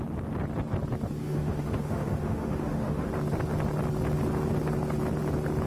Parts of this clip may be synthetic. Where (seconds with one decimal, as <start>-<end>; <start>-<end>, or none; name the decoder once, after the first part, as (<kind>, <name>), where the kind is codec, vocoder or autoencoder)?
1.2-3.1 (autoencoder, DAC-VAE)